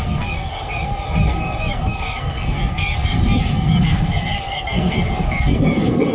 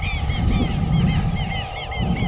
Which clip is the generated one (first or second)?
first